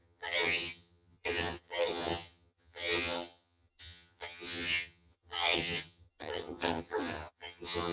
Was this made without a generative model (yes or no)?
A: no